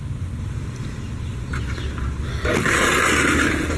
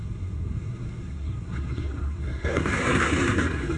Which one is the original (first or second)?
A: first